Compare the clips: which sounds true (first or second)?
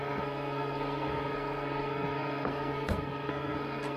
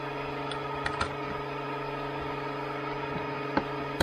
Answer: second